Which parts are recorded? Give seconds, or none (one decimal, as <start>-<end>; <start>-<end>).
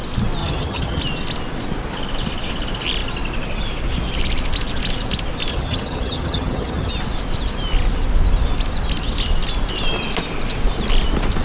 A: 0.0-0.4; 1.0-5.5; 6.9-11.4